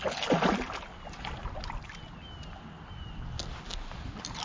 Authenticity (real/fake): real